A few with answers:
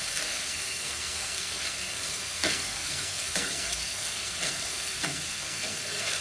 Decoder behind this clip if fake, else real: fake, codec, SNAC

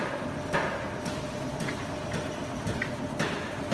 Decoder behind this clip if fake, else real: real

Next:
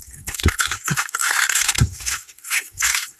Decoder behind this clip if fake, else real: fake, codec, SNAC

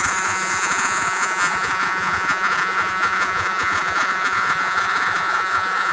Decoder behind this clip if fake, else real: fake, vocoder, Vocos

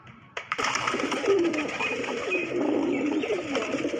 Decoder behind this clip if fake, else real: fake, vocoder, BigVGAN v2